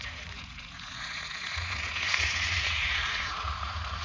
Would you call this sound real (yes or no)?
no